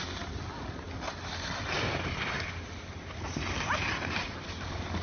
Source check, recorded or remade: recorded